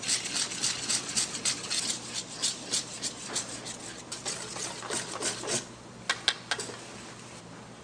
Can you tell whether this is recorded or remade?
recorded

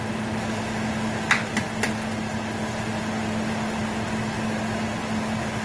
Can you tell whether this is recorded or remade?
recorded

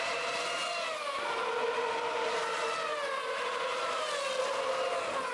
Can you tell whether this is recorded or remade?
recorded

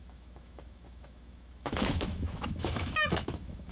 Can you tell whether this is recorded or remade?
remade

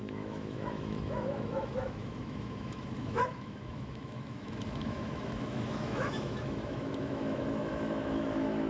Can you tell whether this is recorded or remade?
remade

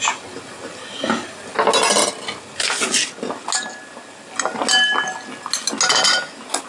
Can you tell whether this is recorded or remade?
recorded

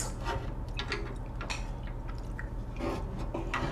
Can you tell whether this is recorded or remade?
recorded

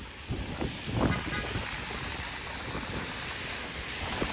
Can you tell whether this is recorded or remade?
recorded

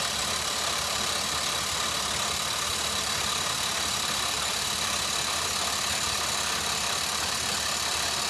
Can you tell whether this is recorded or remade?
remade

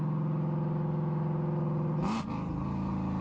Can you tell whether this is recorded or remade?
recorded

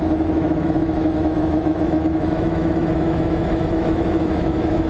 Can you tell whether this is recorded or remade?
remade